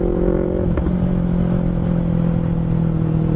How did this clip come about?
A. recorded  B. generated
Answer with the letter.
A